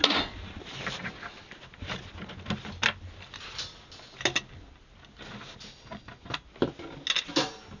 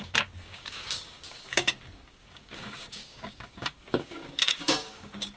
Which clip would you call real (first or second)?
first